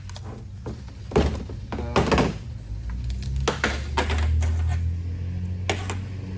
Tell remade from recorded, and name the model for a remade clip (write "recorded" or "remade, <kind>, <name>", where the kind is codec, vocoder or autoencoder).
recorded